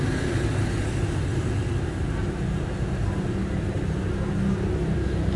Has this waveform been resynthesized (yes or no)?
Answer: no